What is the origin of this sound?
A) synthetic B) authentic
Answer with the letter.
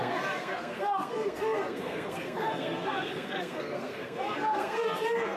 A